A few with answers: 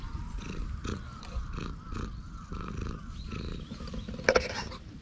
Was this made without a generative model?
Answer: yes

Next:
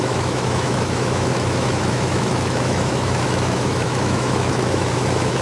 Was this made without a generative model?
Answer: no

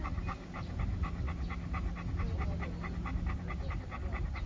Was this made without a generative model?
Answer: yes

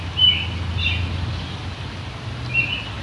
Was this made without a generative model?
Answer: yes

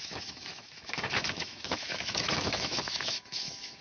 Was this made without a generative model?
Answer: no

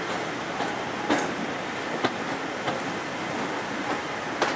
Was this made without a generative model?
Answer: yes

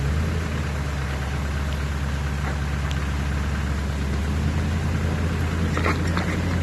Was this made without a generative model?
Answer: yes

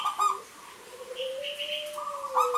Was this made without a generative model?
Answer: yes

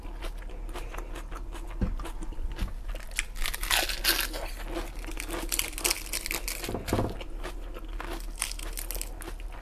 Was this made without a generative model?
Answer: yes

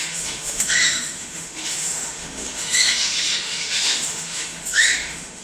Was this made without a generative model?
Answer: no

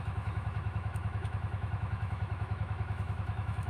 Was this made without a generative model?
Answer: no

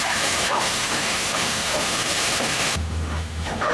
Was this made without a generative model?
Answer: no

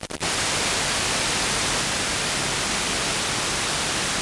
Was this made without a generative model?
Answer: yes